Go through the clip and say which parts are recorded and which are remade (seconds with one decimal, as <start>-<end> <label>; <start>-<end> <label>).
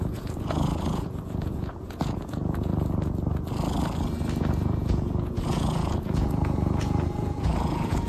0.0-2.7 remade; 2.7-4.4 recorded; 4.4-8.1 remade